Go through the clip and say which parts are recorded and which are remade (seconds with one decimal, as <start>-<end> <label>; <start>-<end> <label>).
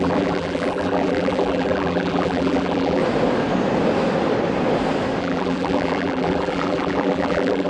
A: 0.0-3.0 remade; 3.0-5.2 recorded; 5.2-7.7 remade